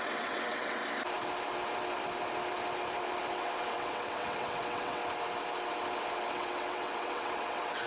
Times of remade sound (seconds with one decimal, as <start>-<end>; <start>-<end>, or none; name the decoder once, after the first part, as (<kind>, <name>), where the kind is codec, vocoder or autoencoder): 0.0-0.8 (vocoder, WaveNeXt); 3.3-5.0; 6.3-7.9